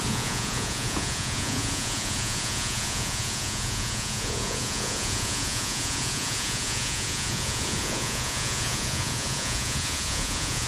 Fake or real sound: fake